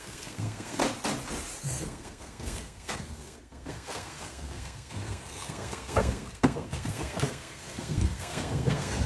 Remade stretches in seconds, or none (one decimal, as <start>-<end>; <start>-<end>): 0.0-0.8; 1.6-9.1